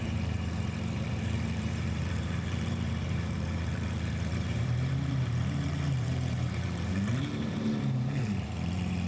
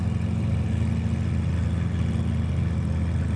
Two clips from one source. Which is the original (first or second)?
second